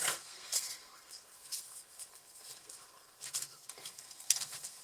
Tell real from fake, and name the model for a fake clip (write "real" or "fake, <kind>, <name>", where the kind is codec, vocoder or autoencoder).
fake, codec, SNAC